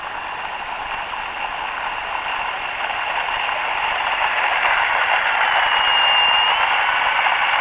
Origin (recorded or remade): recorded